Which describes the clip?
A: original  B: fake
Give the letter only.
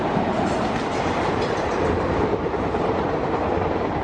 B